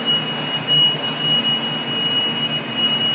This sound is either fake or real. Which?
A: real